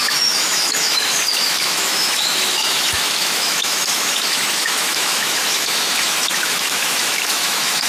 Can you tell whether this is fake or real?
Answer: fake